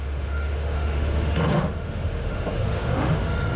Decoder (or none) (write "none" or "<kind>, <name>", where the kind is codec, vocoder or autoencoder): autoencoder, DAC-VAE